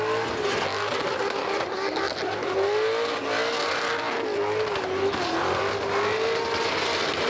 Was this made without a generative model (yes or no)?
yes